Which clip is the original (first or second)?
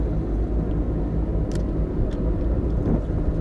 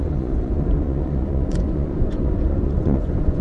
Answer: first